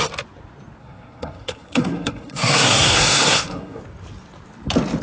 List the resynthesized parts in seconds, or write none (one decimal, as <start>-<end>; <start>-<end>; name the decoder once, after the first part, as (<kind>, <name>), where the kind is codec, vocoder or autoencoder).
0.8-3.8 (codec, SNAC)

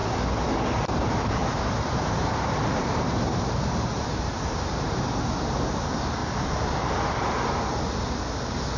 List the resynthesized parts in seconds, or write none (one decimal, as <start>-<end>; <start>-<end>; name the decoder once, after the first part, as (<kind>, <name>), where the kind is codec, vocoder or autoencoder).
0.9-6.2 (vocoder, BigVGAN v2)

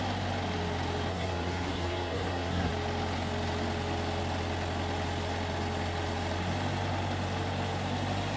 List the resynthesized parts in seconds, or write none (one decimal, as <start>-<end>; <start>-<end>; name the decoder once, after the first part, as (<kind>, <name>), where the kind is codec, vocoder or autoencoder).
1.1-2.7 (codec, SNAC)

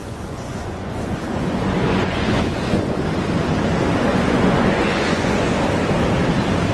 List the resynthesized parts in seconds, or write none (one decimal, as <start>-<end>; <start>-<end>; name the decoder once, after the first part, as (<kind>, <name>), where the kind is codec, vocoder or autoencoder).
0.0-3.0 (vocoder, Vocos); 4.1-5.6

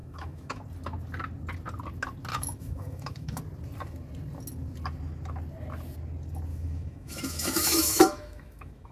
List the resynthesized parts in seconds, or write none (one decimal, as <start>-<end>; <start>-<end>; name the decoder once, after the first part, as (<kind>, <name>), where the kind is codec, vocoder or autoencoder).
0.0-0.6 (autoencoder, DAC-VAE); 2.3-3.4; 6.5-8.9

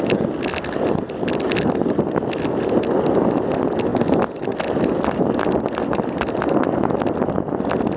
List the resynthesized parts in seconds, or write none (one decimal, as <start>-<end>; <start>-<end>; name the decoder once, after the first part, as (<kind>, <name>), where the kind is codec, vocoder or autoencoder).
none

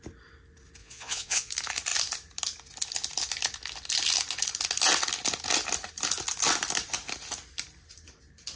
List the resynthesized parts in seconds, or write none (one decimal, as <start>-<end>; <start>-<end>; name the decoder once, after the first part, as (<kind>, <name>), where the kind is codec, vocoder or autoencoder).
0.8-1.5 (vocoder, Vocos)

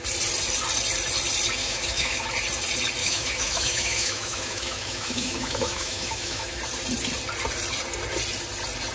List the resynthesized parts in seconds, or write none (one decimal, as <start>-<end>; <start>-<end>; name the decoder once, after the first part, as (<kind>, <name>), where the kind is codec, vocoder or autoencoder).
1.6-2.3 (autoencoder, DAC-VAE); 3.0-6.6